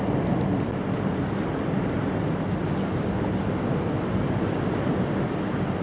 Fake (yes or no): no